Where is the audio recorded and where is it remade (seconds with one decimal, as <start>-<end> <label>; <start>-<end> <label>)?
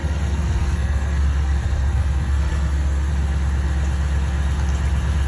0.0-3.1 remade; 3.1-5.3 recorded